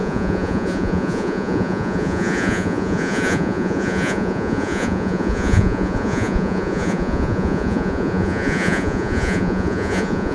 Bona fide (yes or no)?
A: no